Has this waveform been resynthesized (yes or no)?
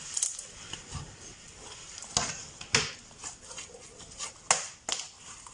no